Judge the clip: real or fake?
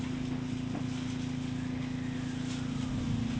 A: real